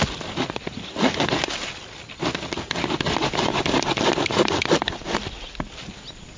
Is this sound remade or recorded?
recorded